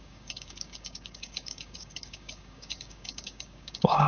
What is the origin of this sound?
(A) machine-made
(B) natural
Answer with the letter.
A